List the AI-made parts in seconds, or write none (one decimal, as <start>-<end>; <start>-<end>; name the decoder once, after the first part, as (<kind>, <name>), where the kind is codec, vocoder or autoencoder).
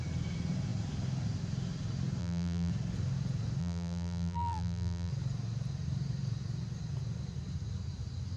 2.2-2.7 (vocoder, BigVGAN v2); 3.6-5.1